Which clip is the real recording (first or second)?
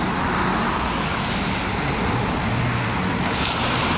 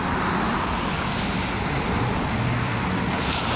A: first